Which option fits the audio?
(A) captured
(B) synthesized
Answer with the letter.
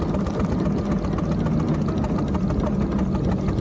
A